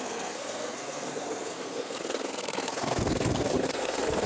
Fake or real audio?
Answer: fake